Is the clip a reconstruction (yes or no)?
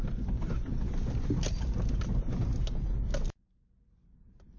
no